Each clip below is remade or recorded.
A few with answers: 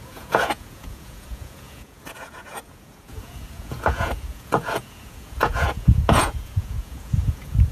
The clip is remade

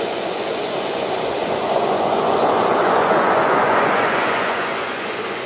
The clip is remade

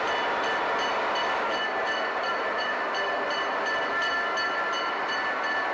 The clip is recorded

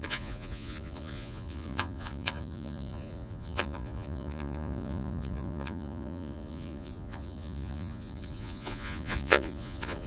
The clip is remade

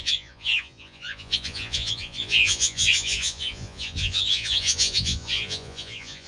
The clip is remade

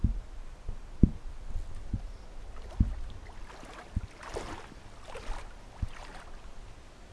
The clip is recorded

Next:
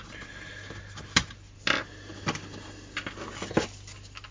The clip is recorded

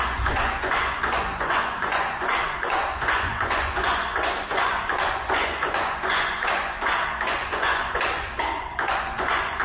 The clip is remade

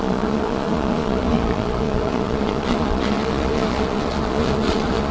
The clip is remade